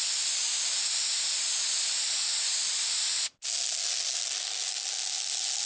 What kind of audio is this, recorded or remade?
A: recorded